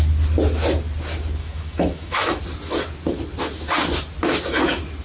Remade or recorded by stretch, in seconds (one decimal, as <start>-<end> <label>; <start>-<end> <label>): 0.0-1.4 recorded; 1.4-2.4 remade; 2.4-5.0 recorded